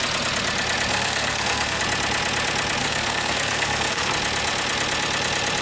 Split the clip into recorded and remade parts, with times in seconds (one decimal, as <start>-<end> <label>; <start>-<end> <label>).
0.0-0.9 recorded; 0.9-1.8 remade; 1.8-2.8 recorded; 2.8-4.1 remade; 4.1-5.6 recorded